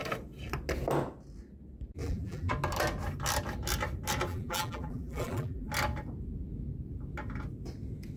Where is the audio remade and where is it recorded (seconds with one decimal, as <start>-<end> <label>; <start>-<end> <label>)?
0.0-2.0 recorded; 2.0-2.5 remade; 2.5-4.3 recorded; 4.3-5.7 remade; 5.7-8.2 recorded